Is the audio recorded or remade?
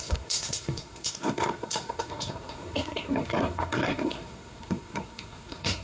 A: remade